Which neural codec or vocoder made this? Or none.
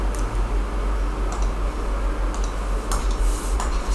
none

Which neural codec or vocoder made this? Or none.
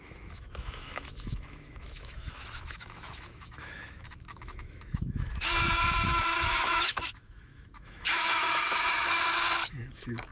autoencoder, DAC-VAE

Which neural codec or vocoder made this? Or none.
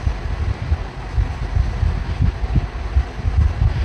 none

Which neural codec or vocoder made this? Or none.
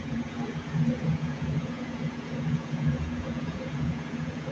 vocoder, Vocos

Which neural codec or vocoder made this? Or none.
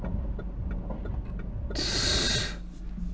none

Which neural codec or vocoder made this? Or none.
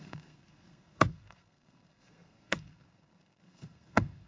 codec, SNAC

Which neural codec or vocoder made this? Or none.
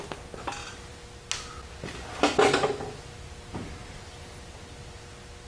none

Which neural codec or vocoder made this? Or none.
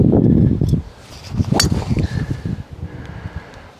none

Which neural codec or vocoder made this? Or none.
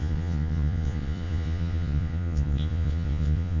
vocoder, Vocos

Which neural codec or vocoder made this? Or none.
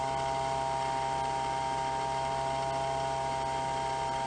none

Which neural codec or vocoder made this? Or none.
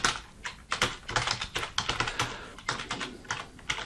none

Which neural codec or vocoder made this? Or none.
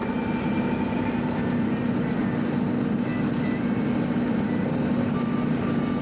none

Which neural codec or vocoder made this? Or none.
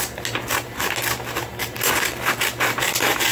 none